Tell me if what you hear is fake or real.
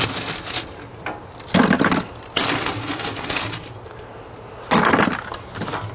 real